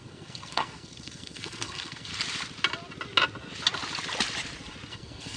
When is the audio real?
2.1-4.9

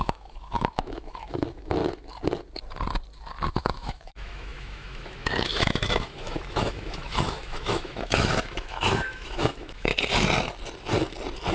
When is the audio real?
1.8-3.5; 9.9-11.5

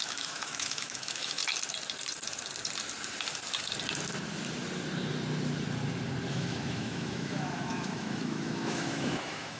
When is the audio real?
1.4-6.3

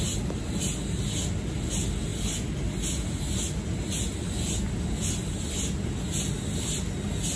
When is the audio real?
0.0-7.4

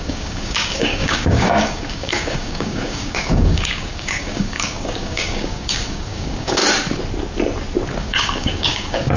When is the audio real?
6.6-8.0

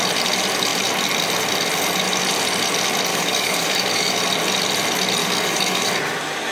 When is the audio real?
0.0-3.1; 4.2-5.2; 5.9-6.5

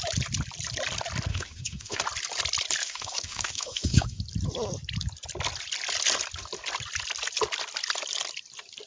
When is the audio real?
0.0-1.3; 2.0-2.8; 4.2-8.9

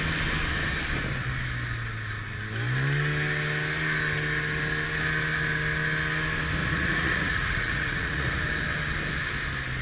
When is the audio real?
0.0-6.6; 8.4-9.8